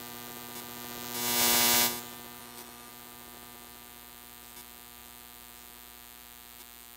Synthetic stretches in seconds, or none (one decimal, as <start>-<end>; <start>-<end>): 2.4-2.9